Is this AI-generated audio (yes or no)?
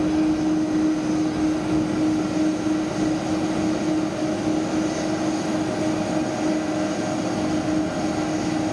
no